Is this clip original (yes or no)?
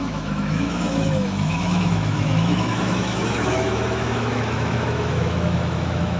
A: no